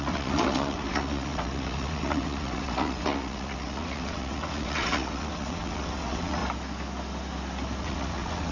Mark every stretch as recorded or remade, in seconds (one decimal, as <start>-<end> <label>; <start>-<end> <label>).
0.0-6.4 remade; 6.4-7.8 recorded; 7.8-8.5 remade